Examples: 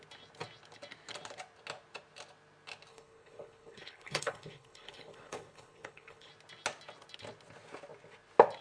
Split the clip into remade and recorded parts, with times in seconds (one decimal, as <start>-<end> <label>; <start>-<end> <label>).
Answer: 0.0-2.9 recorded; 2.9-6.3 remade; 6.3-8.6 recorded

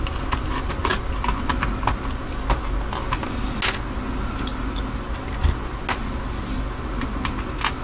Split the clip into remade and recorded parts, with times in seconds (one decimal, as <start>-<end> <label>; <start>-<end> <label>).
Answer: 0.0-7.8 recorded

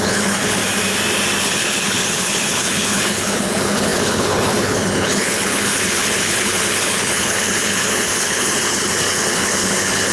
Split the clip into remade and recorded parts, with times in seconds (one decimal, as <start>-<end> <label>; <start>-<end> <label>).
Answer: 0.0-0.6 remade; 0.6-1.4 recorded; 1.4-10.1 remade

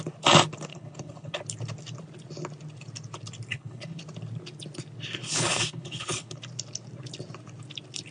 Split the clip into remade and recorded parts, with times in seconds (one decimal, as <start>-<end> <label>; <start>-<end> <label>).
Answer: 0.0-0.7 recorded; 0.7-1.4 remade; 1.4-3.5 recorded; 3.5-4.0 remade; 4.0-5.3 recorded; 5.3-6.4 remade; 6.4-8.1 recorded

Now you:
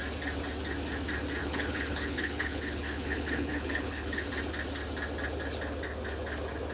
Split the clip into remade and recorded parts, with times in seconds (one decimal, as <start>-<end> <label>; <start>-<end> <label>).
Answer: 0.0-1.4 recorded; 1.4-4.3 remade; 4.3-6.7 recorded

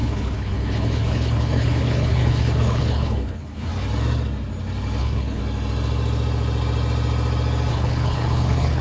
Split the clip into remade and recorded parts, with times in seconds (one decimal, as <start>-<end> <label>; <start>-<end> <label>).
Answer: 0.0-3.7 remade; 3.7-5.0 recorded; 5.0-5.4 remade; 5.4-7.7 recorded; 7.7-8.8 remade

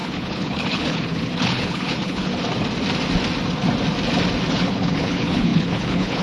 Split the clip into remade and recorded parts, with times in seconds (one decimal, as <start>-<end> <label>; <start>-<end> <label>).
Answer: 0.0-2.3 remade; 2.3-4.5 recorded; 4.5-6.2 remade